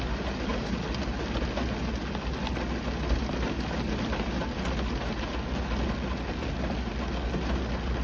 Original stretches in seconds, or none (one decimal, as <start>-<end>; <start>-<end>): 0.0-8.0